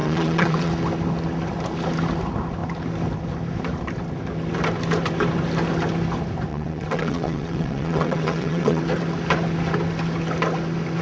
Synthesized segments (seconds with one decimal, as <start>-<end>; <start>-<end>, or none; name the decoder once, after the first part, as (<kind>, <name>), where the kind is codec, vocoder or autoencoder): 0.0-0.7 (vocoder, WaveNeXt); 6.5-8.8